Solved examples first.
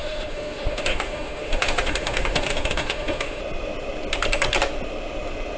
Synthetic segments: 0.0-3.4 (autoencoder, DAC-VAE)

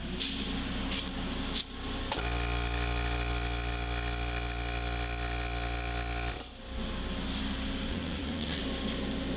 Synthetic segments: 7.9-8.6 (vocoder, Vocos)

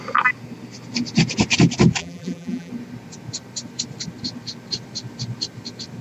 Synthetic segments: 2.0-2.7 (vocoder, BigVGAN v2)

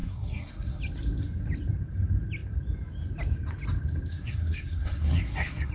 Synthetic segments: 0.0-0.8 (codec, SNAC); 4.1-5.7

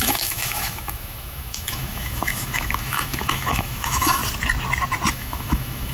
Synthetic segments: 0.0-4.2 (autoencoder, DAC-VAE); 5.1-5.9

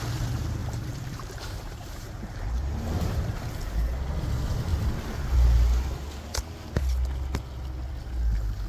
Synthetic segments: 0.6-3.5 (vocoder, BigVGAN v2)

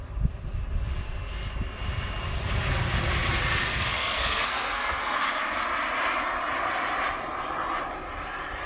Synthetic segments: 3.7-5.2 (codec, SNAC)

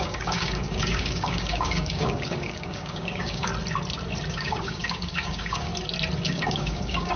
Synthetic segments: 0.0-3.5 (codec, DAC); 4.3-5.7; 6.2-7.2